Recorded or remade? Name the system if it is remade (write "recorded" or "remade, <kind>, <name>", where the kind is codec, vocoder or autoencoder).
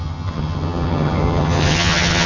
remade, vocoder, HiFi-GAN